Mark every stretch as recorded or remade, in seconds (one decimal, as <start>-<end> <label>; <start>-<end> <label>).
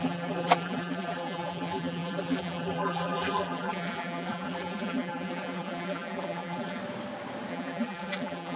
0.0-6.8 remade; 6.8-7.5 recorded; 7.5-8.6 remade